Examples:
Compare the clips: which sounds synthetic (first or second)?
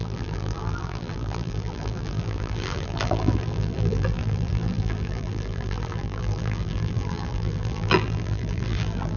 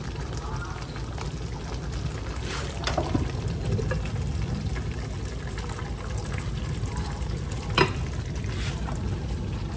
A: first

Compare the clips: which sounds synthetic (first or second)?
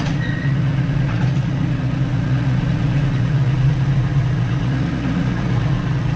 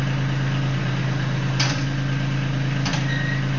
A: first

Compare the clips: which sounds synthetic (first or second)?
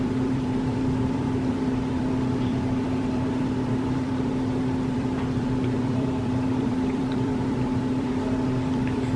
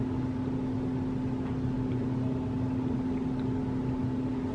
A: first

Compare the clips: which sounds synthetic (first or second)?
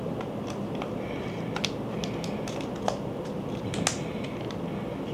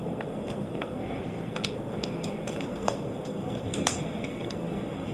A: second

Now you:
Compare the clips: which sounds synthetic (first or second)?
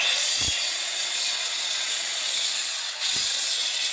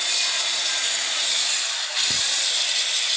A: first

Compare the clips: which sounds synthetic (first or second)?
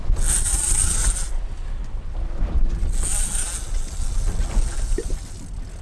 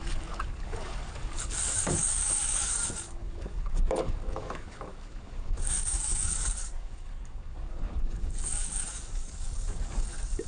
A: second